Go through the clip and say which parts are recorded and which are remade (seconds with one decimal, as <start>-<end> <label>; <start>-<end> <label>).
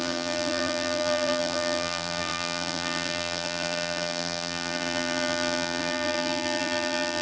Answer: 0.0-7.2 remade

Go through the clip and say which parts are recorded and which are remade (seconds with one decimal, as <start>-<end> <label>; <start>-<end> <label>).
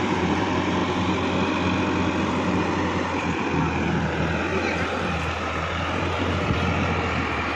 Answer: 0.0-0.8 remade; 0.8-2.2 recorded; 2.2-4.5 remade; 4.5-5.0 recorded; 5.0-7.6 remade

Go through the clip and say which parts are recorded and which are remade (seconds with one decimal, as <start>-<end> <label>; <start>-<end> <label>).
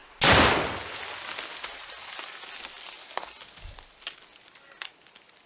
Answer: 0.0-5.5 recorded